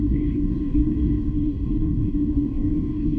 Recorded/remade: remade